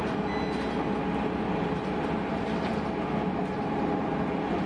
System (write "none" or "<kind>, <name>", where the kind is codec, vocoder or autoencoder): none